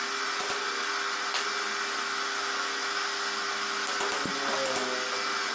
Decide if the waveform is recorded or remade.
recorded